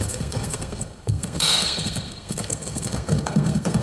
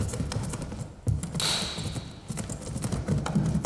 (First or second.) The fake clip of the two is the first